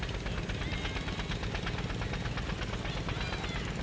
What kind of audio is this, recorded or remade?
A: recorded